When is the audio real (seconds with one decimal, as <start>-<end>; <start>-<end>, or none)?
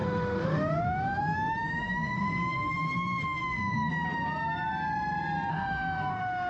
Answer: 3.9-5.5